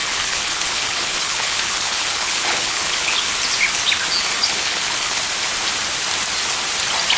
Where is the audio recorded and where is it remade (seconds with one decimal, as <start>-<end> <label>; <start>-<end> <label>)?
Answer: 0.0-3.3 remade; 3.3-4.4 recorded; 4.4-5.2 remade; 5.2-7.2 recorded